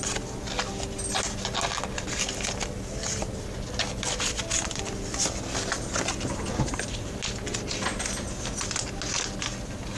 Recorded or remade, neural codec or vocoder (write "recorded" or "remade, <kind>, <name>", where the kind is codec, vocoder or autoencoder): recorded